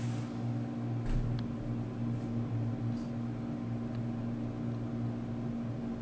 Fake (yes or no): no